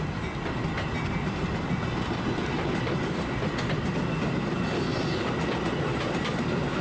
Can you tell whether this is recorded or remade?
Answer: recorded